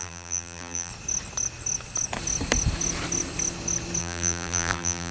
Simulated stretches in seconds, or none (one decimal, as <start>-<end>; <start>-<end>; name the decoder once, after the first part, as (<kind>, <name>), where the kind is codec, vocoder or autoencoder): 0.0-0.9 (vocoder, BigVGAN v2); 4.0-5.1